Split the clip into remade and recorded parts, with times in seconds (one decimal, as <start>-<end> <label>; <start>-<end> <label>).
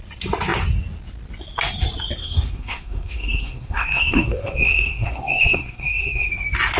0.0-2.2 recorded; 2.2-6.3 remade; 6.3-6.8 recorded